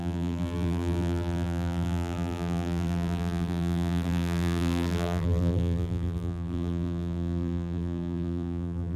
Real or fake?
fake